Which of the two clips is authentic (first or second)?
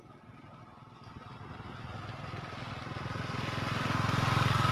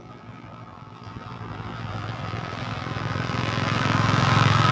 first